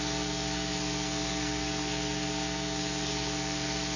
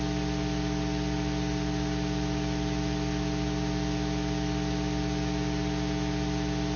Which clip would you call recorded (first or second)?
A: second